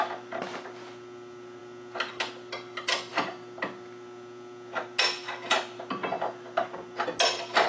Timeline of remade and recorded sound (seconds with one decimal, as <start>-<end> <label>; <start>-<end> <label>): 0.0-7.7 recorded